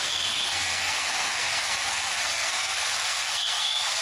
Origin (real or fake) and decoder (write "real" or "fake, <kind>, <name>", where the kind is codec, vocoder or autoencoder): fake, codec, SNAC